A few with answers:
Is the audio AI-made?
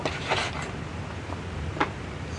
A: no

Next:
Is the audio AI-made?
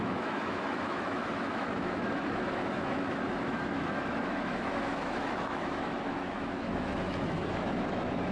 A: yes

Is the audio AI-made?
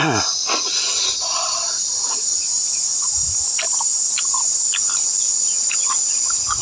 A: no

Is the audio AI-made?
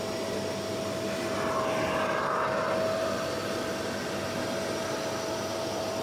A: no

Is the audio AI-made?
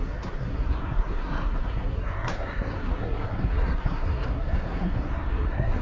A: yes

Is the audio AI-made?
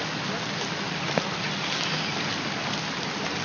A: no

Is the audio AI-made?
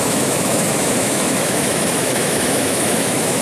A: yes